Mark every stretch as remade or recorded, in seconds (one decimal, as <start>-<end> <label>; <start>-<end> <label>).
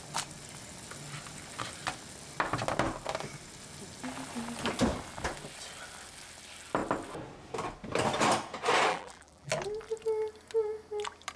0.0-8.9 recorded; 8.9-9.5 remade; 9.5-11.4 recorded